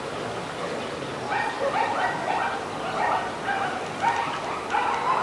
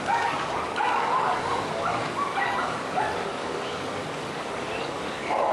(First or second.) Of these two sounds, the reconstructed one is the second